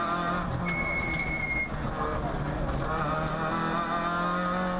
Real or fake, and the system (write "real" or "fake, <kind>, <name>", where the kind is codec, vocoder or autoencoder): real